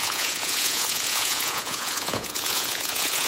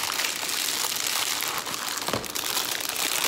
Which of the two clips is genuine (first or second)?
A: second